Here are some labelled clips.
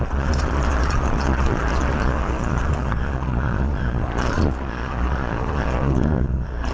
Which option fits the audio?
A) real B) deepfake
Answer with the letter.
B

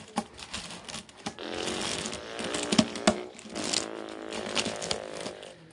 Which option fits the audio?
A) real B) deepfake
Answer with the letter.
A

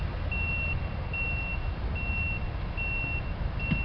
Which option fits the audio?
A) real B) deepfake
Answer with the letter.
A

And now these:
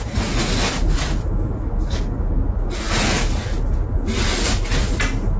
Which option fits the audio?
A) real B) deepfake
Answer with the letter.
A